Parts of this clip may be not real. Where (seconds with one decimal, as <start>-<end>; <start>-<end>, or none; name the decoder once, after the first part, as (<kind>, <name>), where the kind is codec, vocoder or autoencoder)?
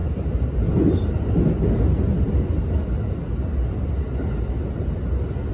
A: none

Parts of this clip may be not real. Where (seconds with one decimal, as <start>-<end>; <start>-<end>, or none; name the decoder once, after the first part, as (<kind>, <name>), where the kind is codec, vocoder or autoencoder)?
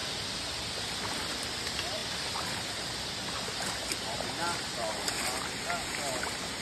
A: none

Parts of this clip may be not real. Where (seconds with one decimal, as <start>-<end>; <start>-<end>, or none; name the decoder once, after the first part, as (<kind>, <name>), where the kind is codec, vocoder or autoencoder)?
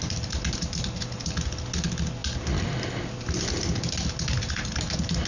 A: none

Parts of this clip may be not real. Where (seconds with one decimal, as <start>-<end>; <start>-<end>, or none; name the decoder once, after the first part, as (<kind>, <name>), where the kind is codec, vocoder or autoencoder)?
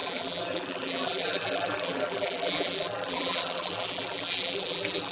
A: 0.0-5.1 (vocoder, BigVGAN v2)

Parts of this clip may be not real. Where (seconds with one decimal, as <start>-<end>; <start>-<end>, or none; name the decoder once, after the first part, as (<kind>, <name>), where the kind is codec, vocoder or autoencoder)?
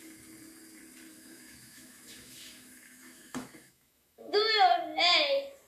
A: 1.1-4.4 (autoencoder, DAC-VAE)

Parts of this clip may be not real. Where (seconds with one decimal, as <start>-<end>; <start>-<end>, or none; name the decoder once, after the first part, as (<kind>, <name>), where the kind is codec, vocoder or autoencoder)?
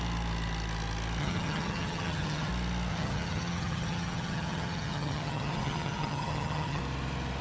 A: 1.2-2.5 (vocoder, HiFi-GAN); 2.9-6.8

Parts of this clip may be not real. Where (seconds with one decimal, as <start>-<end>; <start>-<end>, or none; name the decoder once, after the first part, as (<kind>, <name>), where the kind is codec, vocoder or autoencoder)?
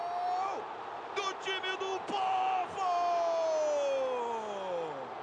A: none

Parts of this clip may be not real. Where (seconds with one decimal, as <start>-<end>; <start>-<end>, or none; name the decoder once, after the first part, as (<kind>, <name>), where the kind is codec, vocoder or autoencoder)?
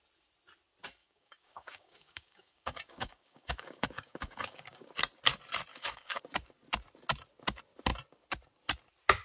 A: 1.0-4.9 (codec, DAC); 5.7-6.2